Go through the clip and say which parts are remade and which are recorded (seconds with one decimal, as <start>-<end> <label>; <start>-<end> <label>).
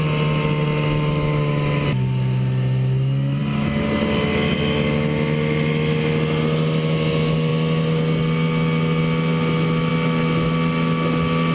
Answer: 0.0-11.5 recorded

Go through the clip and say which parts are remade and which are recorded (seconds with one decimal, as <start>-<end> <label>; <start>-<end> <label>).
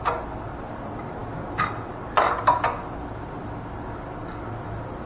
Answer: 0.0-5.1 recorded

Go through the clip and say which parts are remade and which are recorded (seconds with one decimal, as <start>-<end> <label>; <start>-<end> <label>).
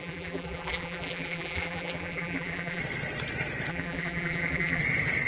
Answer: 0.0-2.8 remade; 2.8-3.7 recorded; 3.7-4.8 remade; 4.8-5.3 recorded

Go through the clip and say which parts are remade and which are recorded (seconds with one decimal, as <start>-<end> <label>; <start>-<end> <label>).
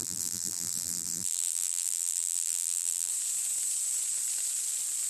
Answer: 0.0-3.1 remade; 3.1-5.1 recorded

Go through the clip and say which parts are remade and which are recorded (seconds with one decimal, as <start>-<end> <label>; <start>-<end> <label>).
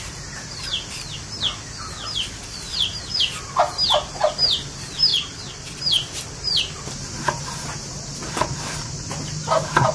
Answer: 0.0-5.1 recorded; 5.1-5.8 remade; 5.8-9.9 recorded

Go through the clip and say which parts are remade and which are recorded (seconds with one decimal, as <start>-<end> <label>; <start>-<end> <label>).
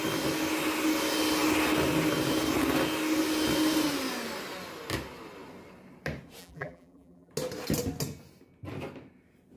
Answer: 0.0-6.4 recorded; 6.4-7.3 remade; 7.3-9.6 recorded